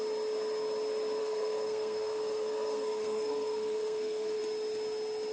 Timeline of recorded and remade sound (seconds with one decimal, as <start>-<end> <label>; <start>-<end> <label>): 0.0-1.2 recorded; 1.2-4.4 remade; 4.4-5.3 recorded